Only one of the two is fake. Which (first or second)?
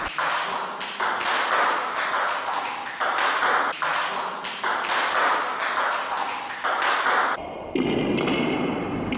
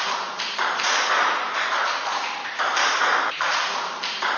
second